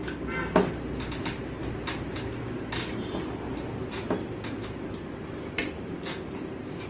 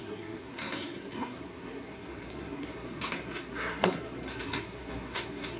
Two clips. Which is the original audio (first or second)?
first